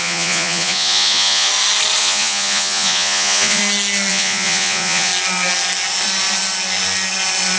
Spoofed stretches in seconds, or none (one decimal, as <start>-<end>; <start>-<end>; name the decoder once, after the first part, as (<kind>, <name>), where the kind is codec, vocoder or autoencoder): 0.0-1.5 (vocoder, Vocos); 2.0-3.6; 4.1-5.1